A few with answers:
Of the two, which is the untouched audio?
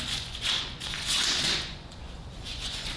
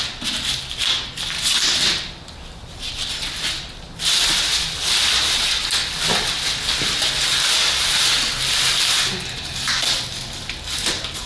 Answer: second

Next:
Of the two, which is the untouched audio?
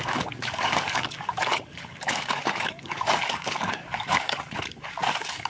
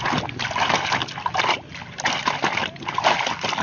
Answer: second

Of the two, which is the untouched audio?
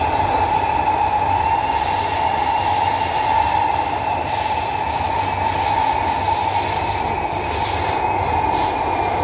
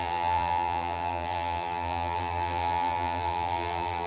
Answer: first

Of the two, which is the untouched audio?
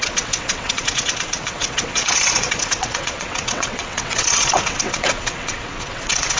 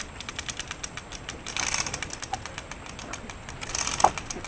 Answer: second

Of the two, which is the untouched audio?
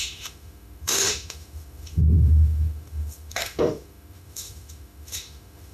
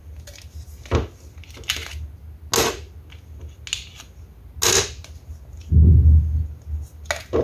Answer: second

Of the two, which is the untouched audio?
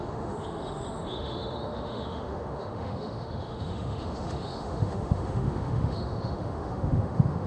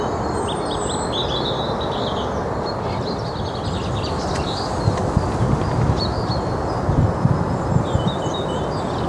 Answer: second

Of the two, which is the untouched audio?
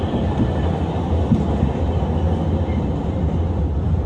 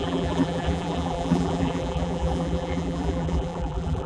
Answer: first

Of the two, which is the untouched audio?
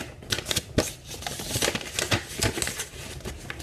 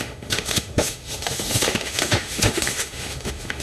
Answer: first